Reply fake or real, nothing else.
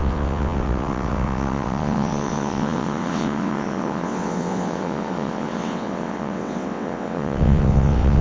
fake